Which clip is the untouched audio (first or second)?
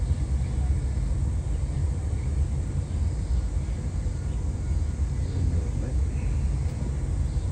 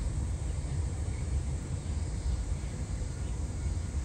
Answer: first